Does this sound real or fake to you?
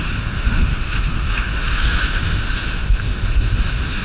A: fake